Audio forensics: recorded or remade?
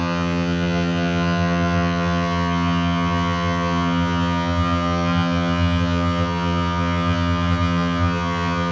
remade